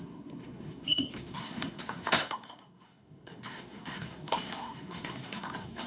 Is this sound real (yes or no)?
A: no